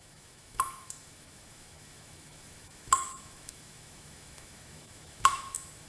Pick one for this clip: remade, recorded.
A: remade